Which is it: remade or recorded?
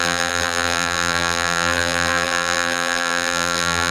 remade